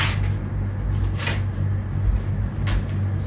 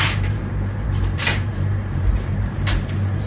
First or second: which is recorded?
first